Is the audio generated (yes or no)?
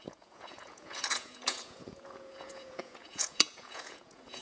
yes